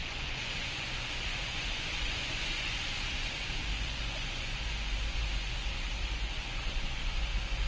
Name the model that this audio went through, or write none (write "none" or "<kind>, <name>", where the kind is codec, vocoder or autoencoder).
vocoder, Vocos